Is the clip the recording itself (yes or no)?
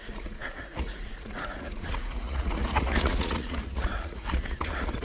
no